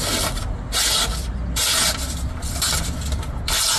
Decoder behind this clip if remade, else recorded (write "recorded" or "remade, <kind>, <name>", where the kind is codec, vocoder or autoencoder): remade, vocoder, BigVGAN v2